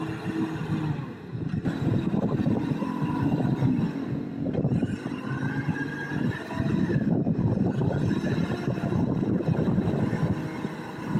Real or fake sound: real